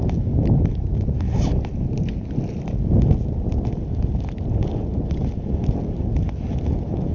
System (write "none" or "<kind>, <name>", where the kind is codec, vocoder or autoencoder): none